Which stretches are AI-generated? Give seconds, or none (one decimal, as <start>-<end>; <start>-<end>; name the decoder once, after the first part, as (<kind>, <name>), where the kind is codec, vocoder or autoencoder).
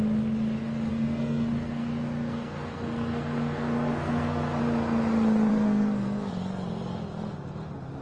0.9-4.6 (codec, SNAC); 5.5-6.3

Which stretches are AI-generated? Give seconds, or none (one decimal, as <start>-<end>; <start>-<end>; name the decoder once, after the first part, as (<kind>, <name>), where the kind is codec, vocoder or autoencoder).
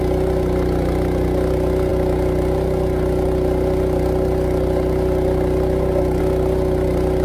none